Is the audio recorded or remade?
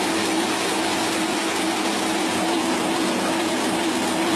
recorded